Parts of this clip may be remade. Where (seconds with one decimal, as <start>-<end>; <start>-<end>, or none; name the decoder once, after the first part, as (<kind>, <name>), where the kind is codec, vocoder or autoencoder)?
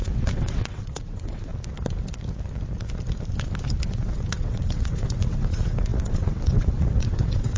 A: 0.0-1.5 (vocoder, WaveNeXt); 3.9-7.6